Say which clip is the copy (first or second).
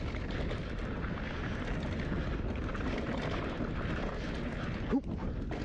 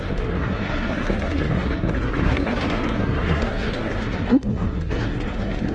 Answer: second